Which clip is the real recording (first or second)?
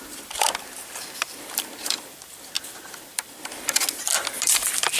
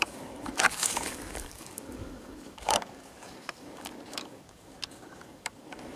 first